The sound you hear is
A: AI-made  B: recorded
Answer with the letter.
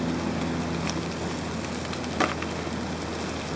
B